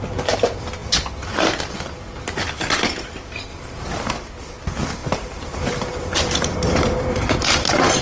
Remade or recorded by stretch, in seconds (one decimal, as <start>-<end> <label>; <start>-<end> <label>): 0.0-3.5 recorded; 3.5-4.1 remade; 4.1-5.0 recorded; 5.0-8.0 remade